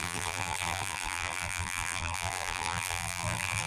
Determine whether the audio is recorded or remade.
remade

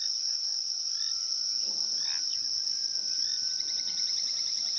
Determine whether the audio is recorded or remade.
recorded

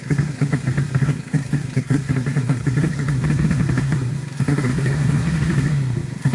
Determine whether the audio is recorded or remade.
remade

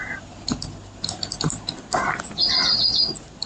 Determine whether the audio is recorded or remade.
recorded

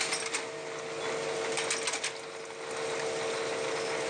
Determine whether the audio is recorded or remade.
recorded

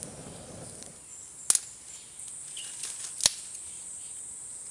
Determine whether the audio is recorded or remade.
recorded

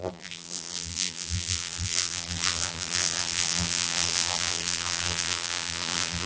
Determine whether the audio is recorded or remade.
remade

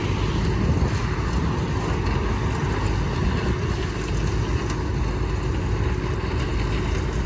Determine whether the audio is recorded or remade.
recorded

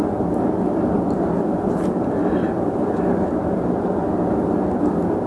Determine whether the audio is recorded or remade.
recorded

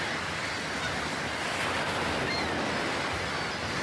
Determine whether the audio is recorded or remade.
recorded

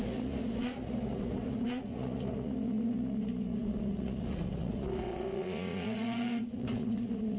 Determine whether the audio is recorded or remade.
remade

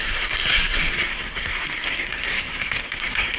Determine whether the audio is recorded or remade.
remade